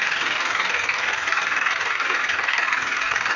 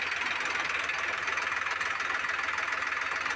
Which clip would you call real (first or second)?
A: second